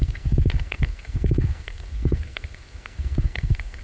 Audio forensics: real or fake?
fake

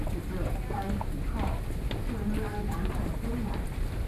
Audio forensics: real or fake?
real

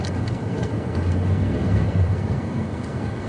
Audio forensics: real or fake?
fake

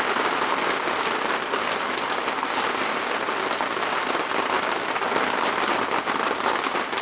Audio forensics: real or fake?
real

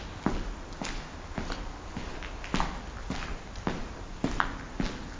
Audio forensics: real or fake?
real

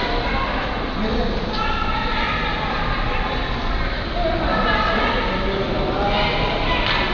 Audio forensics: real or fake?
real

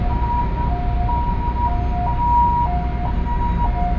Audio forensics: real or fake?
real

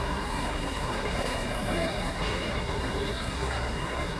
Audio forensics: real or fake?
fake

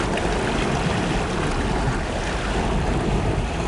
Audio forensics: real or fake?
real